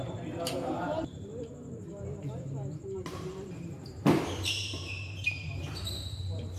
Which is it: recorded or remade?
remade